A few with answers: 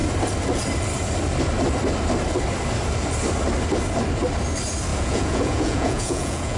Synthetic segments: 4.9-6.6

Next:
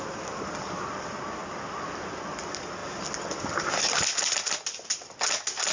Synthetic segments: none

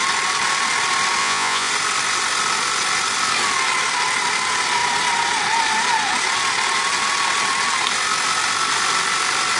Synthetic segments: 1.2-1.7

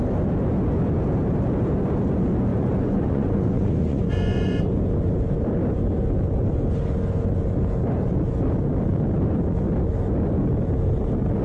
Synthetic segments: 2.5-4.6

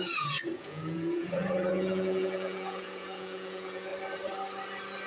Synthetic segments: 0.0-3.9